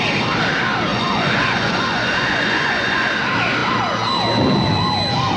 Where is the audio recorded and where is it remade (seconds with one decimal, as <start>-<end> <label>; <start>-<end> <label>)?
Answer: 0.0-0.9 recorded; 0.9-3.1 remade; 3.1-5.4 recorded

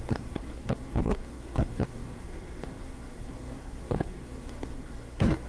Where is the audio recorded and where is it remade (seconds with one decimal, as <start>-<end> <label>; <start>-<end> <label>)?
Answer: 0.0-5.5 remade

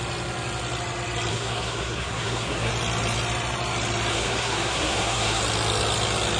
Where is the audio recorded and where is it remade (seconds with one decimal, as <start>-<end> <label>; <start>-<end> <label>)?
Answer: 0.0-1.3 recorded; 1.3-2.7 remade; 2.7-4.1 recorded; 4.1-5.4 remade; 5.4-6.4 recorded